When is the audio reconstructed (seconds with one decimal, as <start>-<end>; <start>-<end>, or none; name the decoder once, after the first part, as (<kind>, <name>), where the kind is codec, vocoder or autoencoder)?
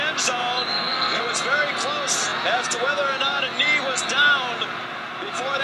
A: 0.7-1.2 (codec, SNAC)